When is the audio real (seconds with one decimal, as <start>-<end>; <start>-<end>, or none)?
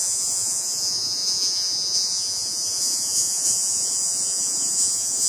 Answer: none